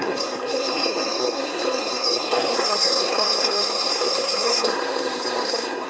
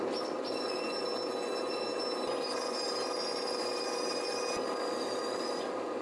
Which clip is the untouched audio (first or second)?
second